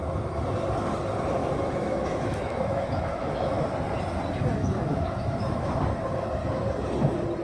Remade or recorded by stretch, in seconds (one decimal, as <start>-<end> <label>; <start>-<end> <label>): 0.0-1.4 recorded; 1.4-3.7 remade; 3.7-4.6 recorded; 4.6-5.7 remade; 5.7-7.4 recorded